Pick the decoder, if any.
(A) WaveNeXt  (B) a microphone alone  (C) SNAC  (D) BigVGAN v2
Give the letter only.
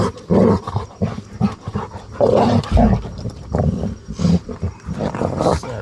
B